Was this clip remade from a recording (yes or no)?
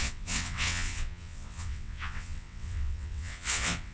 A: yes